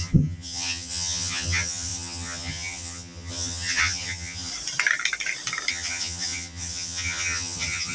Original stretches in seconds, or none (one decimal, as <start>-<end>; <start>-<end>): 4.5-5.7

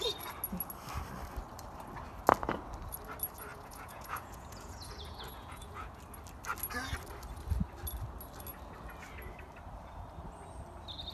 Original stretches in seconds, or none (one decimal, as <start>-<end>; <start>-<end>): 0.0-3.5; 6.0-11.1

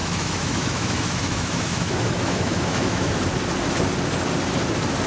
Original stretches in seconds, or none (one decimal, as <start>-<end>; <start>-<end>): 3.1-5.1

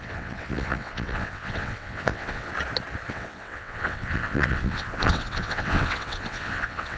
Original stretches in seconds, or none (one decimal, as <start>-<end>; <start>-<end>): 2.5-3.1

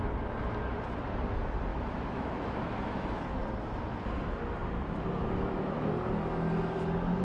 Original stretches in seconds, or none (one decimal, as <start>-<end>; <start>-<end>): 0.0-1.7; 3.4-5.2; 5.9-7.2

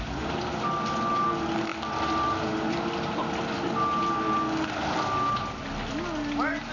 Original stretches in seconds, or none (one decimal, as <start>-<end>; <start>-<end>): 0.0-6.7

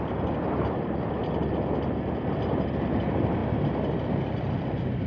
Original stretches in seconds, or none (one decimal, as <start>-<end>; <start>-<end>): 0.0-5.1

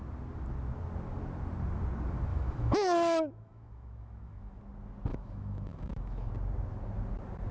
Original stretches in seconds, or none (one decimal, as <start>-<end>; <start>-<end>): 0.0-2.3; 4.6-5.1; 6.3-7.5